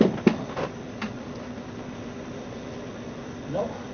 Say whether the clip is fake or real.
real